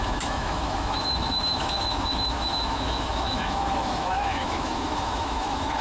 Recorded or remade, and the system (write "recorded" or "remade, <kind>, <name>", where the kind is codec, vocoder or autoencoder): remade, autoencoder, DAC-VAE